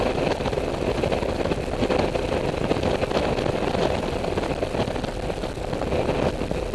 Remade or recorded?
recorded